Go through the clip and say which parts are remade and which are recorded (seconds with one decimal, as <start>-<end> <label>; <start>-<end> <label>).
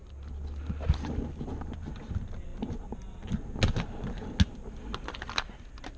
0.0-6.0 recorded